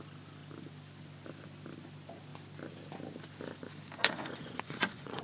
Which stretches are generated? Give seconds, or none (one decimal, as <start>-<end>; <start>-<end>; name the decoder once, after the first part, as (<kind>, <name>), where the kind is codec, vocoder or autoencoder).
4.0-5.2 (vocoder, Vocos)